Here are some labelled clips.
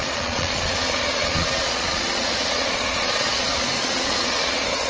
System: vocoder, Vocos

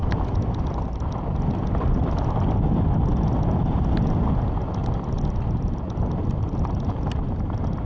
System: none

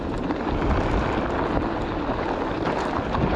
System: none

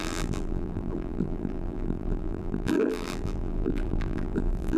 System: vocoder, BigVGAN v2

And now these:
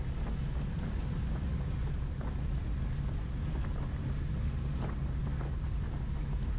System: none